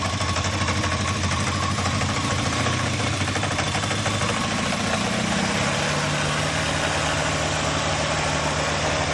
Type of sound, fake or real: real